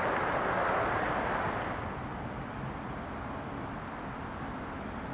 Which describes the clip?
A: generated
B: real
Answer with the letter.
B